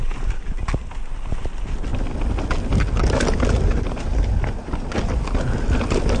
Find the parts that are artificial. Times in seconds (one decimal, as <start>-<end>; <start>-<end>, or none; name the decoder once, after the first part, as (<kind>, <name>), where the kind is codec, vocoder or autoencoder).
none